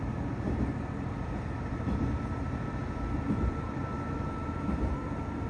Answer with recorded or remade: remade